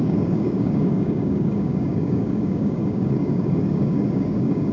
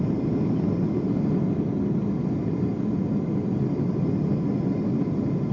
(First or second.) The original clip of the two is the second